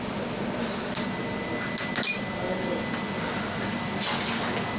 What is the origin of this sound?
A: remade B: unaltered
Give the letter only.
B